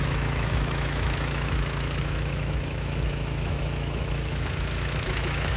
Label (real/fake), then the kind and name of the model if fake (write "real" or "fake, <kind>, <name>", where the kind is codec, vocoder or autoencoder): fake, autoencoder, DAC-VAE